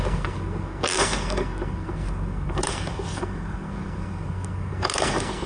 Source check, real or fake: fake